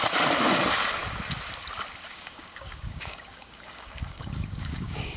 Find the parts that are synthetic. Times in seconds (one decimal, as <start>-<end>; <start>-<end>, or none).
2.1-5.2